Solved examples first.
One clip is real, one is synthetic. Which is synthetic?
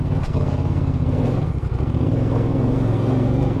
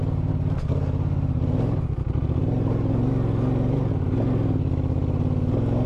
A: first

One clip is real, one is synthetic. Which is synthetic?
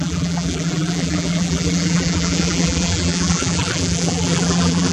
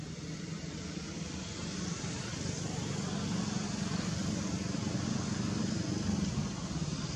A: first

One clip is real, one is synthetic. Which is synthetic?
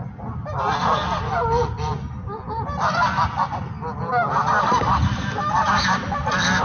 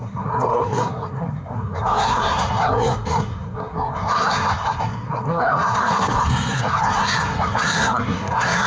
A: second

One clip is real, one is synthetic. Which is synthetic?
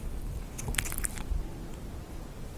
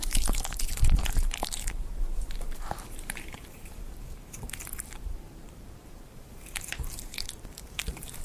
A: second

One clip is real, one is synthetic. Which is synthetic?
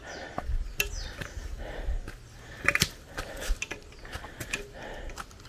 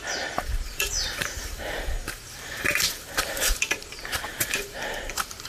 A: second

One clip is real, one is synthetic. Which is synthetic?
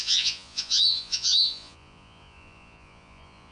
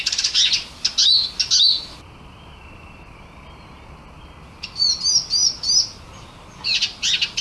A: first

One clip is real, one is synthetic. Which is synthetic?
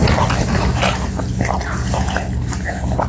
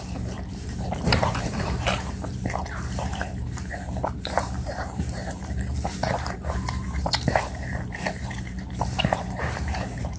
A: second